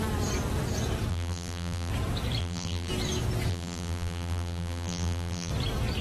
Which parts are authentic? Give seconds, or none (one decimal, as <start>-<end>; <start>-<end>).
0.0-1.1; 1.9-2.4; 2.9-3.5; 5.5-6.0